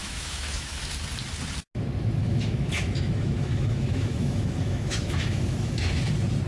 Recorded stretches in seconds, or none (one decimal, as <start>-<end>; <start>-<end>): 0.9-2.2; 6.1-6.5